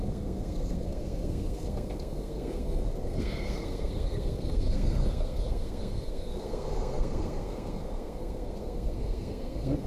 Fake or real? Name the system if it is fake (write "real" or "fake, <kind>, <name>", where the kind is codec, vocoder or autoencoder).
fake, codec, SNAC